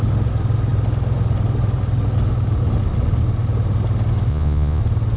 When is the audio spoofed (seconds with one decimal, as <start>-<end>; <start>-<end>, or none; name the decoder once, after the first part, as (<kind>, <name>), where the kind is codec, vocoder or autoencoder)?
4.3-4.8 (vocoder, Vocos)